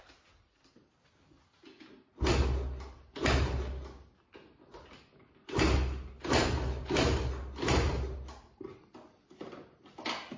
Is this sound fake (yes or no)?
no